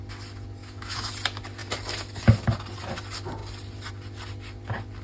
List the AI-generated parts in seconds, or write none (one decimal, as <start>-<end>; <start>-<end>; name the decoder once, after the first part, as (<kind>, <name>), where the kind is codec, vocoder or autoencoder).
0.6-1.1 (autoencoder, DAC-VAE)